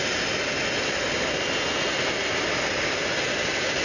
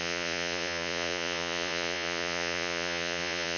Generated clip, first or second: second